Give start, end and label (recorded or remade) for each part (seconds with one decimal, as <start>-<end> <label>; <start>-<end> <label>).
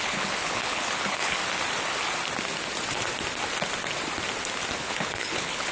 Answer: 0.0-1.4 remade; 1.4-4.8 recorded; 4.8-5.7 remade